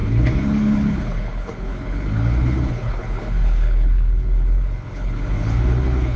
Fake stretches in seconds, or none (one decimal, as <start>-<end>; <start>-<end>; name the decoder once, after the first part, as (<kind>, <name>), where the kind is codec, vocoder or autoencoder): 0.0-6.2 (codec, HILCodec)